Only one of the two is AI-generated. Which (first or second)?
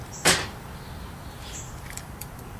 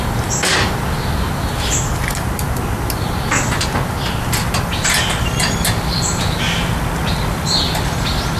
first